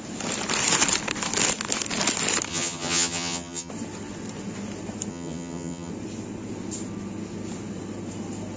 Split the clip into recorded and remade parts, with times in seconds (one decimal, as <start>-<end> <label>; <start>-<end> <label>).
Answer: 0.0-2.5 recorded; 2.5-3.7 remade; 3.7-5.1 recorded; 5.1-5.9 remade; 5.9-8.6 recorded